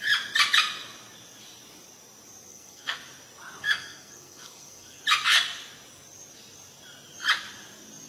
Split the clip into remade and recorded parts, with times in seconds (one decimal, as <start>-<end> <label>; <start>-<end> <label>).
0.0-2.5 recorded; 2.5-3.0 remade; 3.0-3.6 recorded; 3.6-5.0 remade; 5.0-8.1 recorded